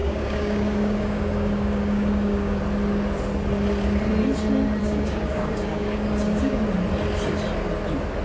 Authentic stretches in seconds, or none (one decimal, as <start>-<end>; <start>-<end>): 2.6-4.8; 6.6-8.2